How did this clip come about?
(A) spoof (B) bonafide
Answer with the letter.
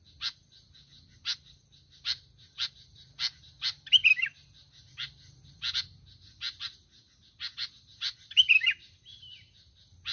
B